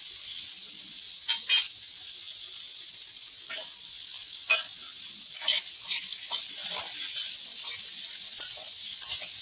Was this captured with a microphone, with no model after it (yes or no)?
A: yes